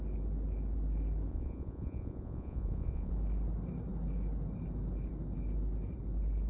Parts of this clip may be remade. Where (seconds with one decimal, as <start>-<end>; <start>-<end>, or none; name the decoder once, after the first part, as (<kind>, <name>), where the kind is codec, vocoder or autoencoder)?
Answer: 1.3-3.1 (vocoder, Vocos)